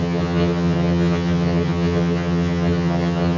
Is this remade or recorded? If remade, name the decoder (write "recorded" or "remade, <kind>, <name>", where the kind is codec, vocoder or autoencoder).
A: remade, vocoder, HiFi-GAN